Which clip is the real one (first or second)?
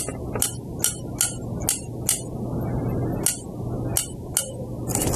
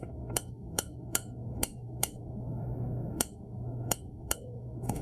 first